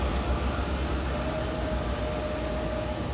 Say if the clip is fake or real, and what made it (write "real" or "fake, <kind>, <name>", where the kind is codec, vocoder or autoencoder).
real